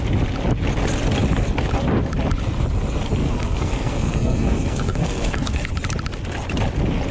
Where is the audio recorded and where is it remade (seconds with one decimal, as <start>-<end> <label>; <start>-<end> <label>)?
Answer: 0.0-3.2 recorded; 3.2-5.7 remade; 5.7-7.1 recorded